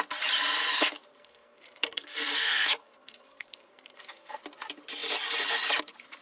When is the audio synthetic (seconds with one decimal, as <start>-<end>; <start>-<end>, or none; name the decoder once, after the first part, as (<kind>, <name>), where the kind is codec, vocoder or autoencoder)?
0.7-4.4 (codec, SNAC)